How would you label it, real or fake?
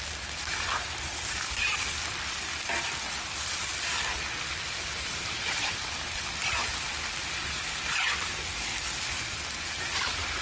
real